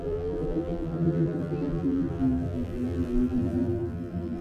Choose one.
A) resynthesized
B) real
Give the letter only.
A